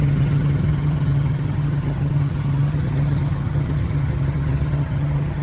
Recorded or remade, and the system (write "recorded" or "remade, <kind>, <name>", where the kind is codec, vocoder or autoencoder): remade, vocoder, HiFi-GAN